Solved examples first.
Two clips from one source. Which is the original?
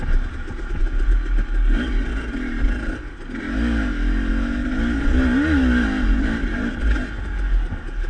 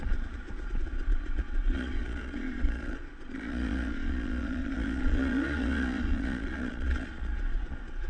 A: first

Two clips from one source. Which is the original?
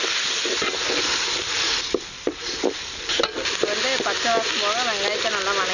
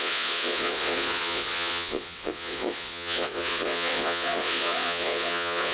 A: first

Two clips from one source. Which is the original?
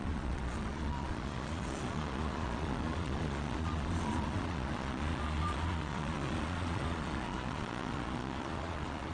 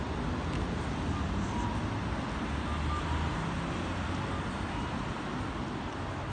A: second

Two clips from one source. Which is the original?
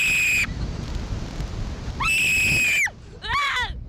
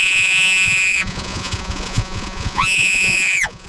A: first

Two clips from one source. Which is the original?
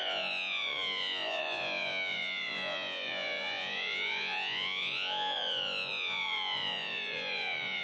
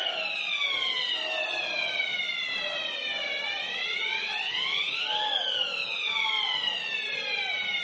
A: second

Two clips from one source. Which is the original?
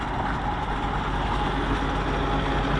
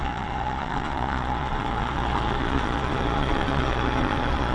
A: first